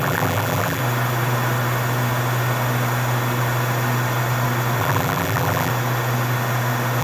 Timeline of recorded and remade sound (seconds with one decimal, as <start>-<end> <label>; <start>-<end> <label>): 0.0-0.8 remade; 0.8-4.8 recorded; 4.8-5.7 remade; 5.7-7.0 recorded